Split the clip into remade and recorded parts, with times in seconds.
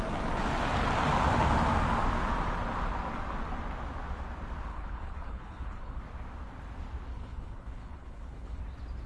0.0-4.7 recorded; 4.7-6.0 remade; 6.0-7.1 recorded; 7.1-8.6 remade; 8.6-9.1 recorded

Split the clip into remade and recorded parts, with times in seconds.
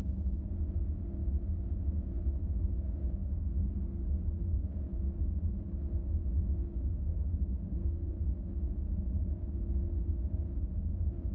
0.0-3.2 recorded; 3.2-4.3 remade; 4.3-6.9 recorded; 6.9-8.1 remade; 8.1-11.3 recorded